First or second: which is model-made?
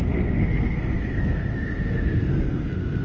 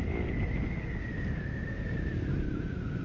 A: first